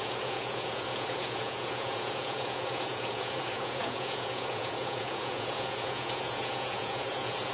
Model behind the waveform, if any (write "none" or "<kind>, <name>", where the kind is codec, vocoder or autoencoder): vocoder, Vocos